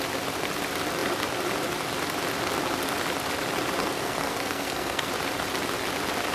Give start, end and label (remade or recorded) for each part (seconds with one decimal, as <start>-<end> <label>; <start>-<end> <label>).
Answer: 0.0-3.8 recorded; 3.8-5.1 remade; 5.1-6.3 recorded